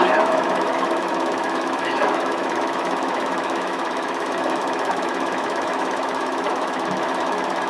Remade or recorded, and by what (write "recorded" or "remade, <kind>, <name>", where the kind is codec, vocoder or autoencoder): remade, autoencoder, DAC-VAE